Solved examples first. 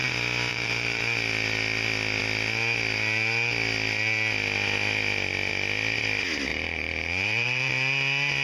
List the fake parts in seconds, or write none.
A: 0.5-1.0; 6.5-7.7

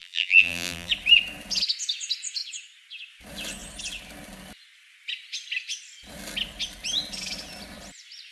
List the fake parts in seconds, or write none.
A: 0.0-0.9

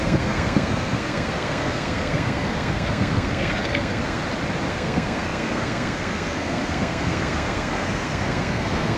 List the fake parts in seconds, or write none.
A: 0.0-4.2; 4.7-9.0

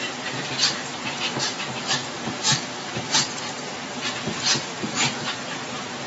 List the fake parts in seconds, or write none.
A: none

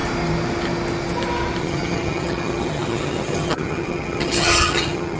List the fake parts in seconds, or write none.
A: 1.6-5.2

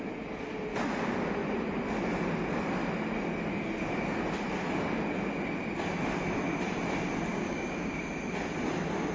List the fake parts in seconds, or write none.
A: 7.3-8.0

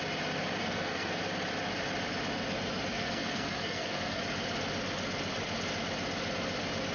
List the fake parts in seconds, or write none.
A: 0.6-1.2; 2.9-4.2

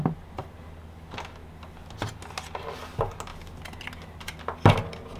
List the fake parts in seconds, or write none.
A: none